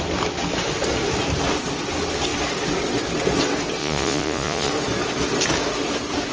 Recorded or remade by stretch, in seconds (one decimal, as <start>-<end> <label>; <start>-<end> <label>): 0.0-3.8 recorded; 3.8-4.7 remade; 4.7-6.3 recorded